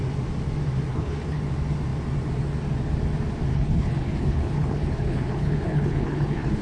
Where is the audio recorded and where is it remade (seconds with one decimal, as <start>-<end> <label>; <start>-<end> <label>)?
0.0-0.9 recorded; 0.9-1.4 remade; 1.4-3.5 recorded; 3.5-6.6 remade